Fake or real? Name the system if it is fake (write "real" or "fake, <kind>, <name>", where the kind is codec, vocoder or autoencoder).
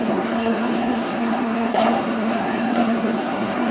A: fake, codec, SNAC